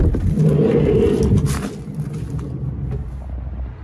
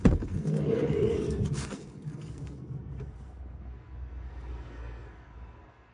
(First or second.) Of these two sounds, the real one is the first